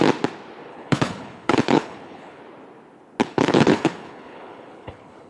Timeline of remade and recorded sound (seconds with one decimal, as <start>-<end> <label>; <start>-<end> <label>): 0.0-0.7 recorded; 0.7-2.4 remade; 2.4-3.2 recorded; 3.2-5.3 remade